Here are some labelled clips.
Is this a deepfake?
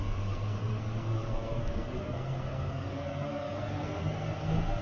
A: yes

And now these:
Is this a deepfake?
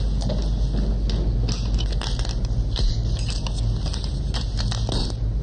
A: no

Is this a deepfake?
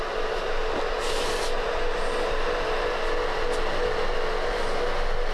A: no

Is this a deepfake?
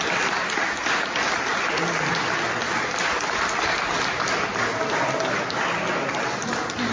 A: no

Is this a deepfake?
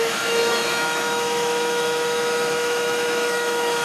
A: yes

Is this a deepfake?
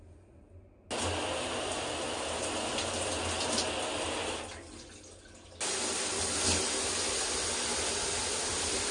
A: no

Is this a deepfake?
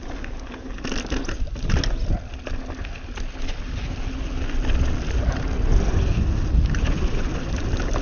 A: no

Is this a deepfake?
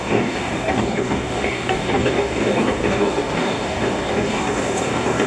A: yes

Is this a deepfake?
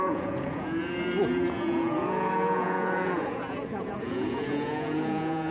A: yes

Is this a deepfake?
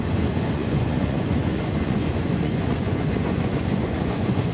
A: yes